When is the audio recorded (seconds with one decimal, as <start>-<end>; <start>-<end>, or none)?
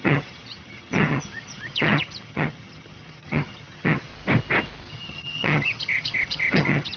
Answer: 4.1-4.9